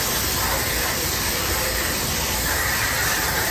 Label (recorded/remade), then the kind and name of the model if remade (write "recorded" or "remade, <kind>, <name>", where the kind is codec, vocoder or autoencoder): recorded